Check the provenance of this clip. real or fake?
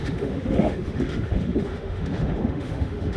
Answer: fake